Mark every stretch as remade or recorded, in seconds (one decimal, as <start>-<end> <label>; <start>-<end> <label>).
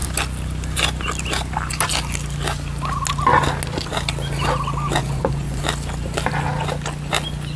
0.0-5.0 recorded; 5.0-5.6 remade; 5.6-7.6 recorded